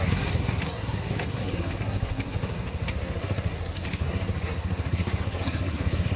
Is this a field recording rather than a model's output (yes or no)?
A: no